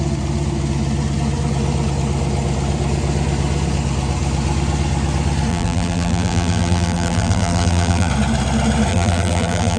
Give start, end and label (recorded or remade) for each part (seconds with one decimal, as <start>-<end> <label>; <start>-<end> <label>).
0.0-5.5 recorded; 5.5-8.1 remade; 8.1-8.9 recorded; 8.9-9.8 remade

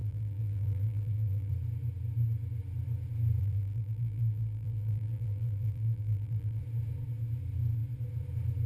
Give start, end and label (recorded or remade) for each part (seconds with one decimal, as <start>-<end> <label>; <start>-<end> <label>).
0.0-1.5 remade; 1.5-3.4 recorded; 3.4-6.6 remade; 6.6-8.7 recorded

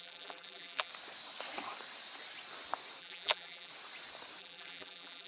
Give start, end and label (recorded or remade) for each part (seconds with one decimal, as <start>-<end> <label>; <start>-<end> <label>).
0.0-0.9 remade; 0.9-3.0 recorded; 3.0-3.7 remade; 3.7-4.4 recorded; 4.4-5.3 remade